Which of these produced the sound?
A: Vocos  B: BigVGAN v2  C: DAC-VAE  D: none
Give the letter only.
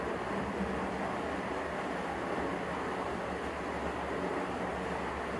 D